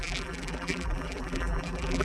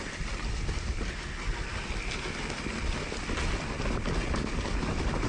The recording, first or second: second